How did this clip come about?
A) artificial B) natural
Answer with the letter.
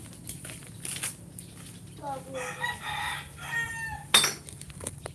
B